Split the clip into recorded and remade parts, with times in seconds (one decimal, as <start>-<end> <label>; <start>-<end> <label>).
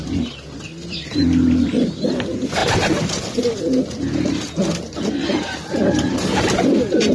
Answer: 0.0-7.1 remade